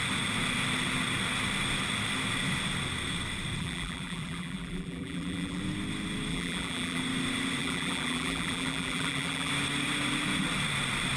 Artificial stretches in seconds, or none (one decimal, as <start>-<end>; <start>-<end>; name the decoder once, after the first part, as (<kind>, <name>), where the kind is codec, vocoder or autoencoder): 3.6-5.6 (vocoder, BigVGAN v2); 6.3-7.0; 7.6-9.5